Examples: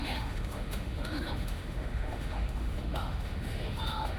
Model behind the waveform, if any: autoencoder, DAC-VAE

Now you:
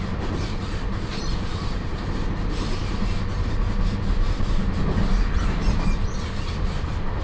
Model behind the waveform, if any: none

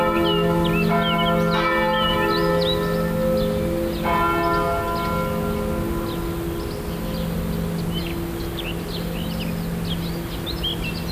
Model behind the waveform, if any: none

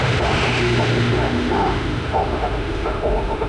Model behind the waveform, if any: autoencoder, DAC-VAE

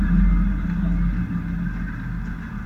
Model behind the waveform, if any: none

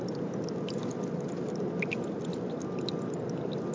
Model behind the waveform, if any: none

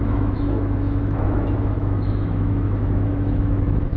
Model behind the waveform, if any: autoencoder, DAC-VAE